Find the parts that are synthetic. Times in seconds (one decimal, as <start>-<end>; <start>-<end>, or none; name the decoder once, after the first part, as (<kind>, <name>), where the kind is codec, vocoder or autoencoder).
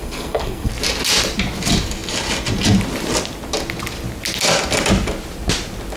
0.0-0.7 (codec, SNAC)